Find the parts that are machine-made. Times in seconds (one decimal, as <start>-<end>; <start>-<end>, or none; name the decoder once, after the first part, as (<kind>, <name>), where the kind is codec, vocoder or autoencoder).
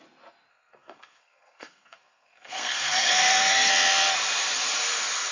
0.5-3.7 (codec, SNAC)